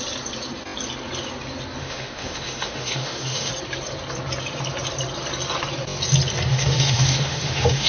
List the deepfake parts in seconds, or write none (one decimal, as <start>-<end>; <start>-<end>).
1.8-3.5; 6.5-7.9